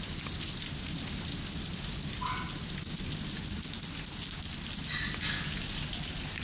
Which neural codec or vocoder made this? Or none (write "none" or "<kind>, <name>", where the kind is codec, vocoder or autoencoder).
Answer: none